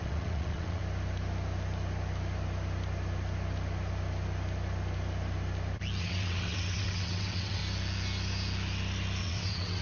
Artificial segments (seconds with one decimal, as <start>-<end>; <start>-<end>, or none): 0.0-0.8; 6.0-7.6; 9.2-9.8